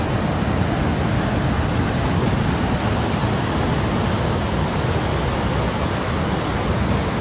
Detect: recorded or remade recorded